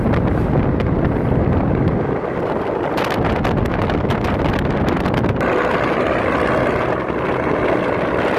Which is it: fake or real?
real